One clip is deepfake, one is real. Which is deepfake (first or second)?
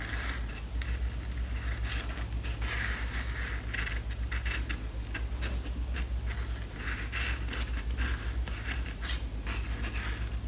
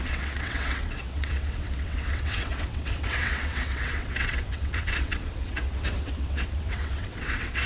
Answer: second